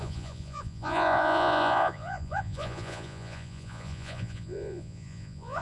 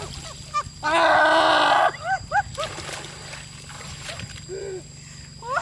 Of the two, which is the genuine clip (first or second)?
second